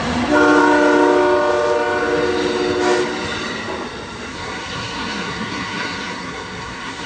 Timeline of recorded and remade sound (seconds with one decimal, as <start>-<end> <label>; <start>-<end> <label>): 0.0-4.3 recorded; 4.3-7.1 remade